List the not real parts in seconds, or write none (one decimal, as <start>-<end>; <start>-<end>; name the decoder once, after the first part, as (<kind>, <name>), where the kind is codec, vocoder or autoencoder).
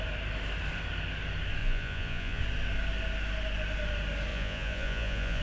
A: 1.6-2.4 (vocoder, Vocos); 4.3-5.4